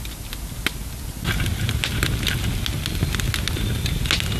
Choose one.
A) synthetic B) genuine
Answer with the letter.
B